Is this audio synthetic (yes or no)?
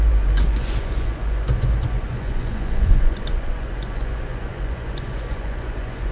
yes